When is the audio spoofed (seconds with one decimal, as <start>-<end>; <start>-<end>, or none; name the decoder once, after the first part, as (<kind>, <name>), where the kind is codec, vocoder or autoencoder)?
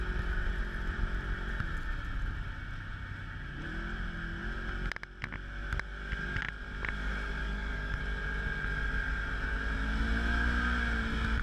7.4-8.0 (codec, DAC)